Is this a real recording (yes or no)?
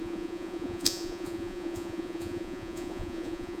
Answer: no